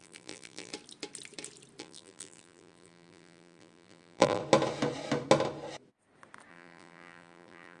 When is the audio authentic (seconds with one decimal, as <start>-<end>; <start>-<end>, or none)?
0.7-1.8; 4.4-6.5